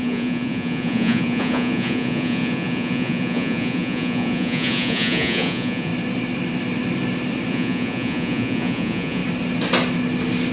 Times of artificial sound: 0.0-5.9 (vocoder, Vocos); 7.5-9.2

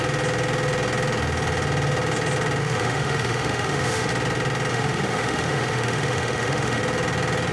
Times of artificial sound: 2.6-4.1 (autoencoder, DAC-VAE); 4.7-6.8

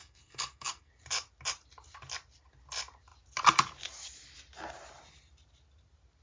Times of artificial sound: 0.0-0.9 (codec, SNAC)

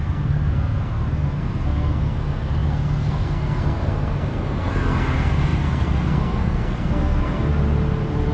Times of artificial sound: 0.0-7.5 (codec, SNAC)

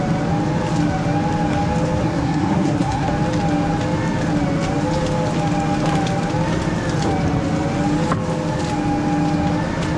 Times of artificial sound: 2.0-3.1 (codec, SNAC)